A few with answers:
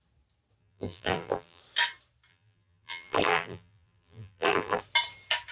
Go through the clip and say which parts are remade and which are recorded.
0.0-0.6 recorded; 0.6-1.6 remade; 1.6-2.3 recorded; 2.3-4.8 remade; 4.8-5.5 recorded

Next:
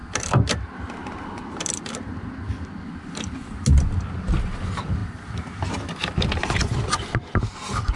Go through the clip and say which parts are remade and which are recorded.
0.0-8.0 recorded

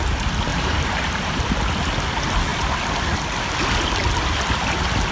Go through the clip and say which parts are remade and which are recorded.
0.0-0.5 recorded; 0.5-1.4 remade; 1.4-5.1 recorded

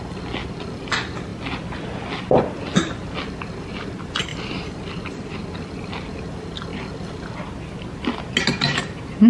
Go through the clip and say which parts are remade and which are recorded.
0.0-9.3 recorded

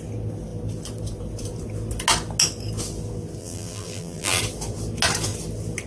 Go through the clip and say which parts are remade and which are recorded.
0.0-3.4 recorded; 3.4-4.4 remade; 4.4-5.9 recorded

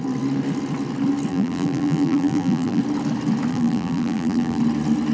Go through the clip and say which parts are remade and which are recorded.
0.0-1.3 recorded; 1.3-2.8 remade; 2.8-3.5 recorded; 3.5-4.6 remade; 4.6-5.1 recorded

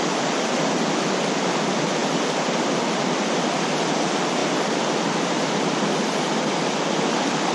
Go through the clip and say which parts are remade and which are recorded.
0.0-4.4 remade; 4.4-5.9 recorded; 5.9-7.5 remade